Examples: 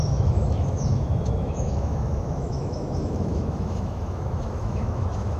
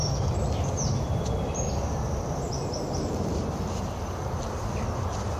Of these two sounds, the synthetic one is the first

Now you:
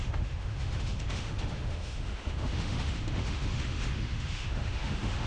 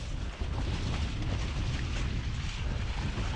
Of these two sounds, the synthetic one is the first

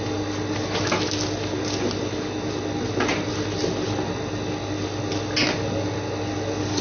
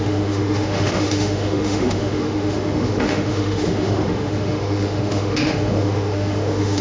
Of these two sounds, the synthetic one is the second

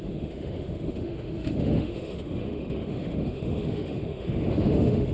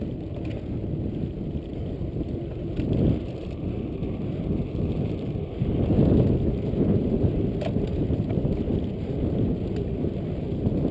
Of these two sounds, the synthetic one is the first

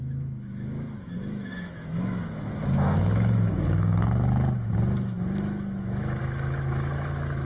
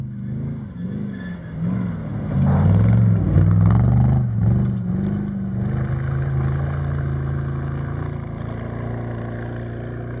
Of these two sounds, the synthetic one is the first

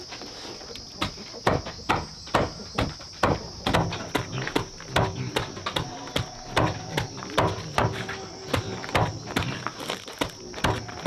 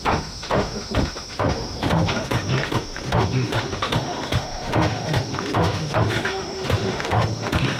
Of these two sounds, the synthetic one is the second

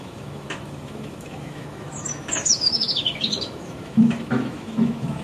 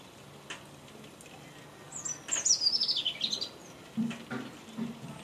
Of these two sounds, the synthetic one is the first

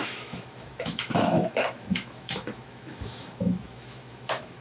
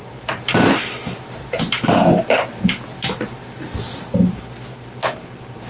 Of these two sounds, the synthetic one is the first